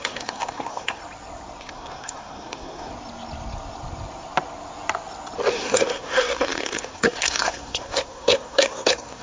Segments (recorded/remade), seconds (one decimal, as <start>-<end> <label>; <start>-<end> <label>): 0.0-1.0 remade; 1.0-1.6 recorded; 1.6-2.9 remade; 2.9-5.5 recorded; 5.5-9.2 remade